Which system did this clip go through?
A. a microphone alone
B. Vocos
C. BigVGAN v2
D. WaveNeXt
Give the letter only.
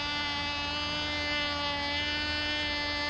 A